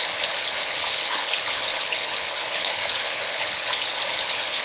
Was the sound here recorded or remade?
remade